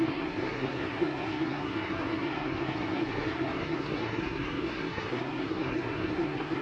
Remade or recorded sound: remade